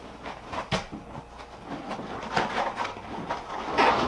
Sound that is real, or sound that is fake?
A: real